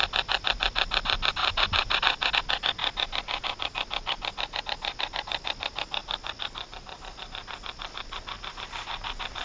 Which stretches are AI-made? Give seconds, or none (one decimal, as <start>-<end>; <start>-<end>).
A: 1.4-2.3